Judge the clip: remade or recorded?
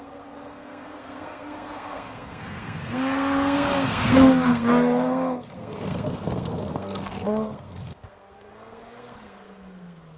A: remade